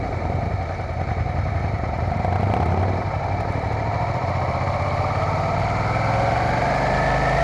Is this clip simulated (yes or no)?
no